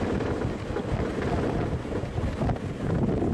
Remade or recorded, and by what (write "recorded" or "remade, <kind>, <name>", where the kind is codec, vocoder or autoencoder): recorded